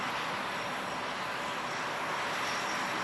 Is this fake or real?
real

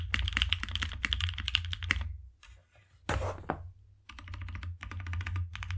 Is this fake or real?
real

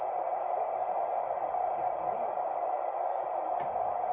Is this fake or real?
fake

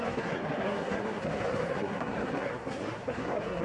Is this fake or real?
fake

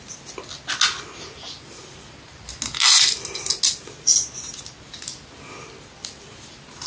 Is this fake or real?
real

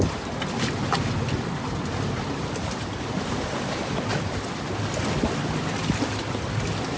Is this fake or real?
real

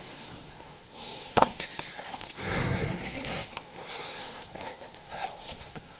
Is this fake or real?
fake